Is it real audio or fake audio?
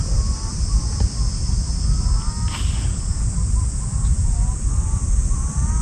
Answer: real